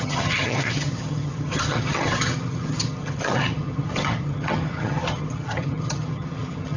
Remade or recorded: remade